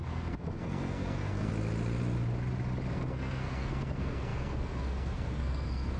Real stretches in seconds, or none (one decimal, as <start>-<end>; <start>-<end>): 1.5-2.9